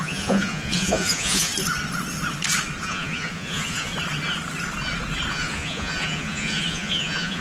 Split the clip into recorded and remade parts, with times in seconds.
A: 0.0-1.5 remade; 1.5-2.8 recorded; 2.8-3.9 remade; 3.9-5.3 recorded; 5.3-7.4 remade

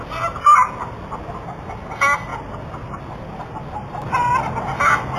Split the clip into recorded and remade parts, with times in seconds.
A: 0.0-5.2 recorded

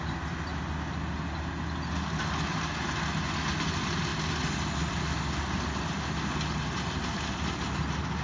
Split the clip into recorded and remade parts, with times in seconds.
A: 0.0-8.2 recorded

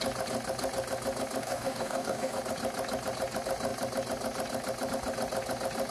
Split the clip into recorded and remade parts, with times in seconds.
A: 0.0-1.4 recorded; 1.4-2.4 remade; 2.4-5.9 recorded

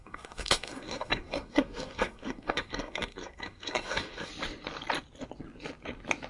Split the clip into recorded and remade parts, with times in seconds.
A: 0.0-4.3 remade; 4.3-6.3 recorded

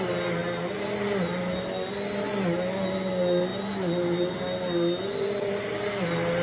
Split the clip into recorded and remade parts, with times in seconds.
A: 0.0-6.4 recorded

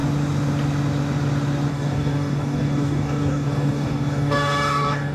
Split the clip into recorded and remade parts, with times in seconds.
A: 0.0-1.7 recorded; 1.7-5.1 remade

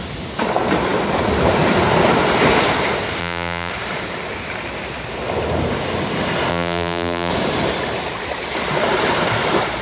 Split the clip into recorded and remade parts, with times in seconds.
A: 0.0-3.2 recorded; 3.2-3.7 remade; 3.7-6.5 recorded; 6.5-7.3 remade; 7.3-9.8 recorded